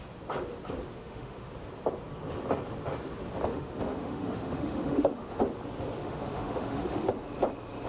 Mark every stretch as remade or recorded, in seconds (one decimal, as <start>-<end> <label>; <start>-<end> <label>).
0.0-1.0 recorded; 1.0-1.5 remade; 1.5-3.5 recorded; 3.5-5.4 remade; 5.4-6.0 recorded; 6.0-7.1 remade; 7.1-7.9 recorded

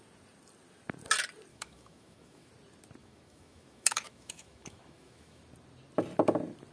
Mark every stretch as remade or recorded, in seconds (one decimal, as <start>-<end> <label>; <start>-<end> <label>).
0.0-1.5 recorded; 1.5-2.5 remade; 2.5-3.0 recorded; 3.0-5.4 remade; 5.4-6.7 recorded

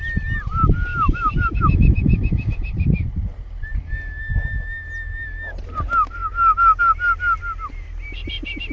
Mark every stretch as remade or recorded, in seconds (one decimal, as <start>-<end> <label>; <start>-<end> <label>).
0.0-0.9 recorded; 0.9-2.5 remade; 2.5-8.7 recorded